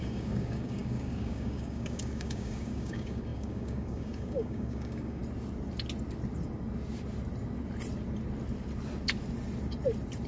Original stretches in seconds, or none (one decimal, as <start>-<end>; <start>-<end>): 5.2-10.3